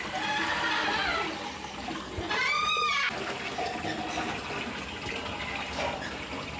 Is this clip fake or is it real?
real